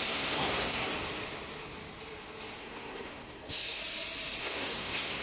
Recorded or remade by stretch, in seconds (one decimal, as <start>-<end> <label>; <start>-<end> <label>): 0.0-0.9 remade; 0.9-2.6 recorded; 2.6-3.8 remade; 3.8-4.4 recorded; 4.4-5.2 remade